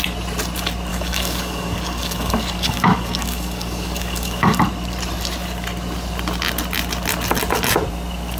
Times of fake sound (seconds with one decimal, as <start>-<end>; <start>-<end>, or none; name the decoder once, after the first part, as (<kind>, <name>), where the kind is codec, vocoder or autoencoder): 0.9-4.6 (codec, DAC)